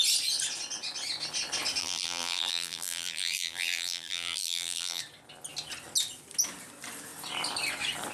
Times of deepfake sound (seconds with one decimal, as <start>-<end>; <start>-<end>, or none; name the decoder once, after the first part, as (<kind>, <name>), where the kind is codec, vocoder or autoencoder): 1.8-5.0 (vocoder, BigVGAN v2)